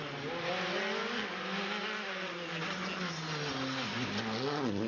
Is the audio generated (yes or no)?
no